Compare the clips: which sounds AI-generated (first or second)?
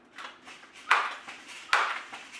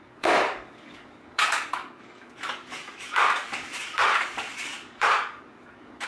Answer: second